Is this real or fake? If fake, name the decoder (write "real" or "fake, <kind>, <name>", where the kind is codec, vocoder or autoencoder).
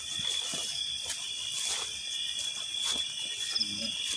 real